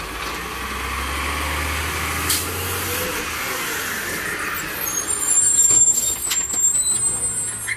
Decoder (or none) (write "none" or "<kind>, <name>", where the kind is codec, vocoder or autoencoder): none